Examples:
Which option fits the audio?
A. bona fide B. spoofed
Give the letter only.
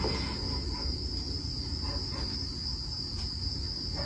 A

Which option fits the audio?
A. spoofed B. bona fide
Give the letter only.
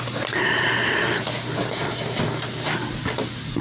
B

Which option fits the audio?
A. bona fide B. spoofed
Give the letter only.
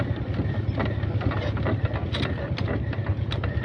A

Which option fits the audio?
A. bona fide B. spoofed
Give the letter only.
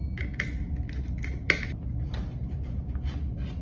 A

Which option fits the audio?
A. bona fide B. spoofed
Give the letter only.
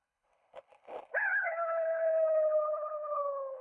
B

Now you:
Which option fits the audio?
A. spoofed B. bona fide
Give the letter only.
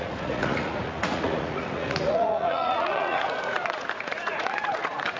A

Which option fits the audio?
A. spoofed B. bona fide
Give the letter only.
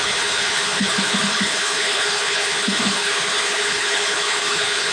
A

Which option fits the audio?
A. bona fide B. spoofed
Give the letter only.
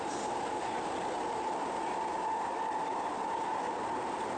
B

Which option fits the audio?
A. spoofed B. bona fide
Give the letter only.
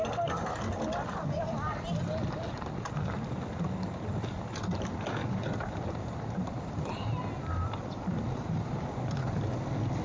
B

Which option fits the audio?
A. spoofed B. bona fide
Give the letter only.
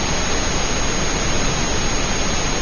B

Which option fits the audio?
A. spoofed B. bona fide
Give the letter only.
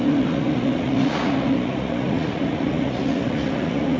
A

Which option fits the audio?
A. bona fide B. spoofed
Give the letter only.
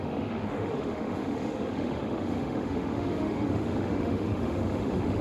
B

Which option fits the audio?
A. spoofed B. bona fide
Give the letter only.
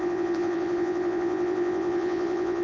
A